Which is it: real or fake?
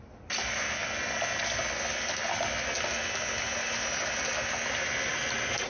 real